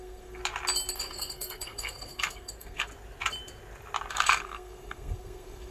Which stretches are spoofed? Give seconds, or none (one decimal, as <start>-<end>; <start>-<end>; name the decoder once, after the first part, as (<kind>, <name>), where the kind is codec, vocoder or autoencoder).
0.0-0.4 (codec, SNAC); 0.9-2.9; 4.1-5.7